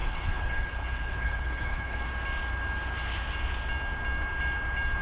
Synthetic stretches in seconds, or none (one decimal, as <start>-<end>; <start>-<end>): 0.0-2.0